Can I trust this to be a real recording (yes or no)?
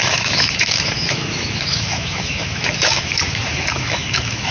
no